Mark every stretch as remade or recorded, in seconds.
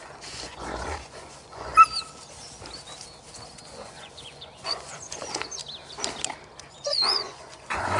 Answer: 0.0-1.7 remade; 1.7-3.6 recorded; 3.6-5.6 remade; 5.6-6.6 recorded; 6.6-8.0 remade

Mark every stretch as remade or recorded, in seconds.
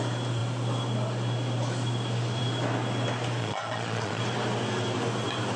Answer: 0.0-3.4 recorded; 3.4-4.2 remade; 4.2-5.6 recorded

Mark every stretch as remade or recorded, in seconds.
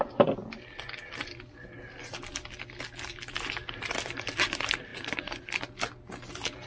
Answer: 0.0-4.9 recorded; 4.9-5.4 remade; 5.4-6.7 recorded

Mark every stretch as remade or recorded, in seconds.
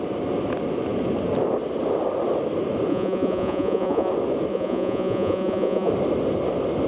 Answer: 0.0-2.9 recorded; 2.9-4.1 remade; 4.1-4.5 recorded; 4.5-5.9 remade; 5.9-6.9 recorded